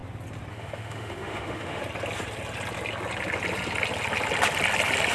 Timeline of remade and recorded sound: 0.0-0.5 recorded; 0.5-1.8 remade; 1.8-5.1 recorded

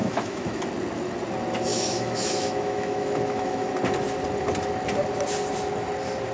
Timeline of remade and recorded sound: 0.0-0.6 remade; 0.6-1.7 recorded; 1.7-3.7 remade; 3.7-6.3 recorded